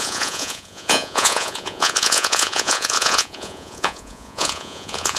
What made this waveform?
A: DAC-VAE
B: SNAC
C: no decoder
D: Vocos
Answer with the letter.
D